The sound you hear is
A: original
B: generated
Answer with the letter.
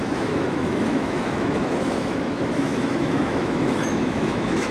B